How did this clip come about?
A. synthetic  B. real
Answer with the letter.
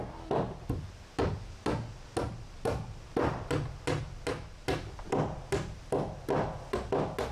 B